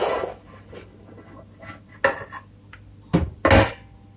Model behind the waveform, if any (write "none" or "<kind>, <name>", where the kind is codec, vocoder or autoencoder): none